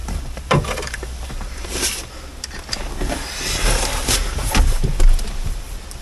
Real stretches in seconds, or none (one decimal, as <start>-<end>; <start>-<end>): 2.1-6.0